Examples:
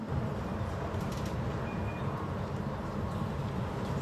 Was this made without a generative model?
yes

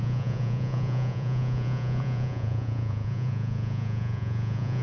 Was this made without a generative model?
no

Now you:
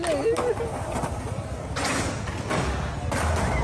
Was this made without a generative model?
yes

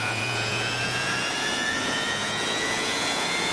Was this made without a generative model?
no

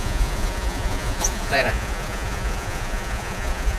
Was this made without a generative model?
no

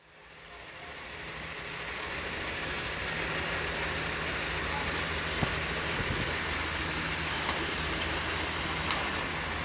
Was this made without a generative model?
yes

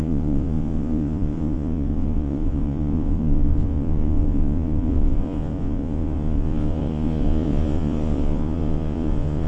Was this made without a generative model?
no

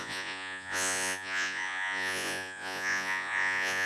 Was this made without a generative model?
no